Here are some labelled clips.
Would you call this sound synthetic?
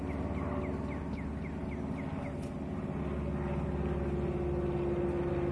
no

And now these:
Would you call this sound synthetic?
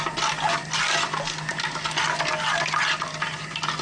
no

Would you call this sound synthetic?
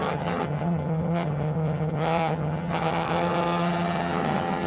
yes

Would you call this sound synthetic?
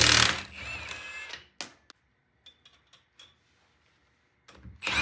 no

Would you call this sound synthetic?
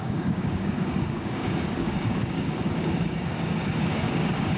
yes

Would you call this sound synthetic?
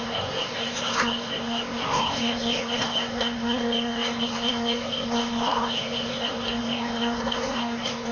yes